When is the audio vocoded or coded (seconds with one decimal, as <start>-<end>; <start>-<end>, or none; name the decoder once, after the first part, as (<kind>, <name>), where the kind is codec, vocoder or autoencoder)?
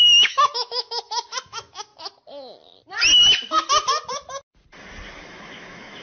0.0-1.9 (autoencoder, DAC-VAE); 5.2-6.0